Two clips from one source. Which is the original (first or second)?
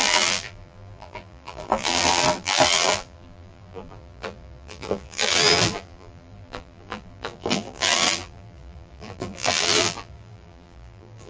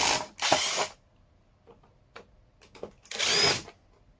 second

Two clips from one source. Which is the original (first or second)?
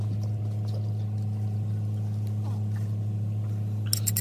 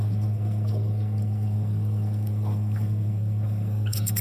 first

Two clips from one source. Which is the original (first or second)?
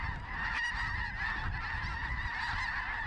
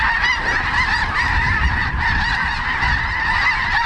first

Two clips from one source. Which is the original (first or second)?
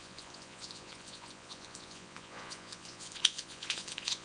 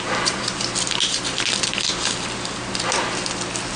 second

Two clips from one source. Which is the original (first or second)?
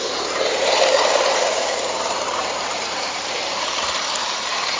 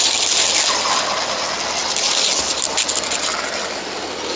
second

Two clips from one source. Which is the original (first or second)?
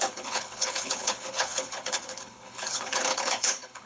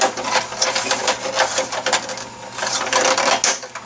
second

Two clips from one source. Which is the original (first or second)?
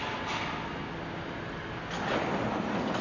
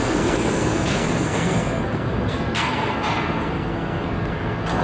first